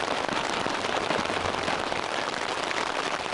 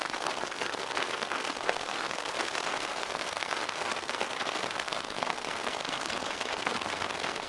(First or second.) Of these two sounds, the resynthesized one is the second